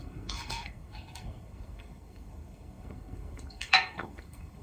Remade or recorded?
remade